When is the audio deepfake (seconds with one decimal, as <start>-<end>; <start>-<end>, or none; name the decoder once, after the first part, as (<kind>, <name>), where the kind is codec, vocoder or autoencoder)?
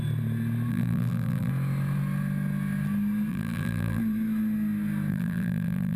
0.7-1.5 (vocoder, BigVGAN v2); 3.3-4.0; 5.1-6.0